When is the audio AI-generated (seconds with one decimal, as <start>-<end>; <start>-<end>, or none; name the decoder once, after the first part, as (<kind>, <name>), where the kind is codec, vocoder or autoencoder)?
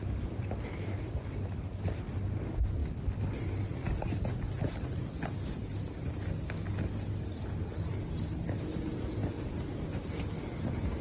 none